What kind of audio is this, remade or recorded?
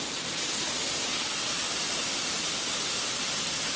recorded